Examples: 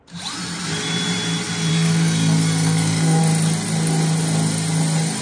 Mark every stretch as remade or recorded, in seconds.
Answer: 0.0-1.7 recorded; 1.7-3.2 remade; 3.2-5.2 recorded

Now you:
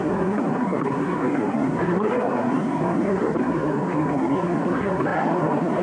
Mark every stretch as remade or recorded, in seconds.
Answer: 0.0-5.8 remade